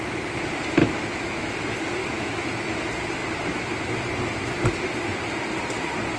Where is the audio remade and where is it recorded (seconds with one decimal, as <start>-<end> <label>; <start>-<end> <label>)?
0.0-0.8 recorded; 0.8-1.5 remade; 1.5-2.0 recorded; 2.0-2.8 remade; 2.8-6.2 recorded

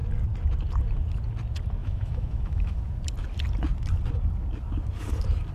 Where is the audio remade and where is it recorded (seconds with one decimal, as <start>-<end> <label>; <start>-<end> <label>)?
0.0-1.8 recorded; 1.8-2.8 remade; 2.8-5.5 recorded